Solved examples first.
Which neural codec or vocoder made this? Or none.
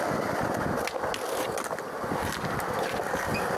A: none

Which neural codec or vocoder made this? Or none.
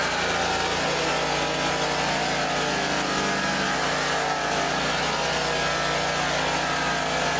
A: none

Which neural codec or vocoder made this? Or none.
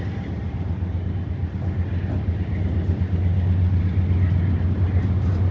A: none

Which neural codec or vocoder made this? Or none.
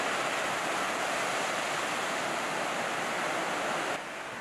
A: none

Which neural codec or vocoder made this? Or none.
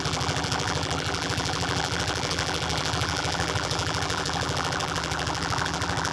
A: vocoder, BigVGAN v2